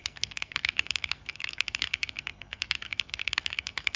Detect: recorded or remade remade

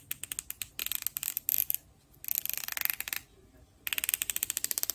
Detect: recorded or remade recorded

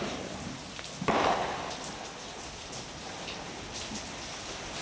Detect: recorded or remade recorded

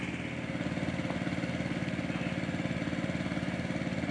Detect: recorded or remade recorded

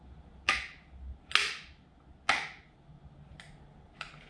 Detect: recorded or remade recorded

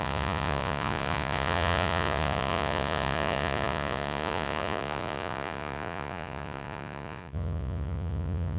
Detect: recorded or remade remade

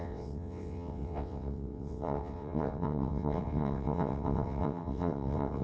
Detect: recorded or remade remade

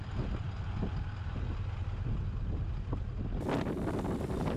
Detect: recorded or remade recorded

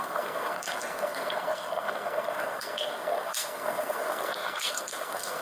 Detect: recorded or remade remade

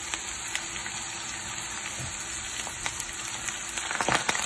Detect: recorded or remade recorded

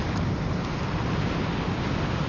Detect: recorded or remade recorded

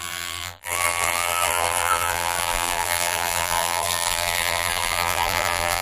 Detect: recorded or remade remade